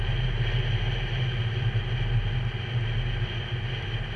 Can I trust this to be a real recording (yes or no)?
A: yes